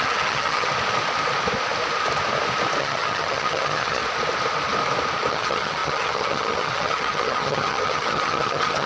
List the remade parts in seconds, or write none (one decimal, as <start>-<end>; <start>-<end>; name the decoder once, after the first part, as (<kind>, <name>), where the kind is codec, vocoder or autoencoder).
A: 0.0-0.7 (vocoder, HiFi-GAN); 2.8-4.0; 5.3-8.9